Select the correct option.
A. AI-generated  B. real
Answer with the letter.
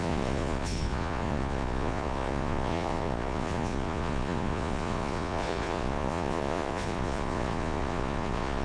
A